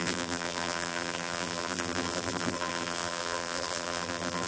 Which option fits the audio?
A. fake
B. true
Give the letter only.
A